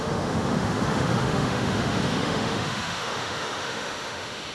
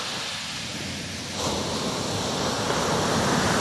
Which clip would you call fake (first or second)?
first